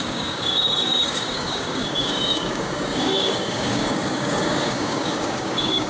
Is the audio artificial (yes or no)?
yes